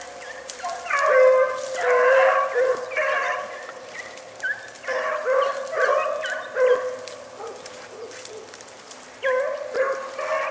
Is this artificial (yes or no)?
no